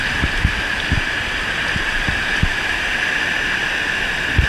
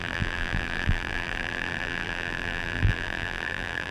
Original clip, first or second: first